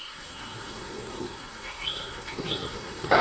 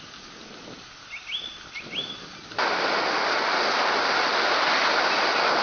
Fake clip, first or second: first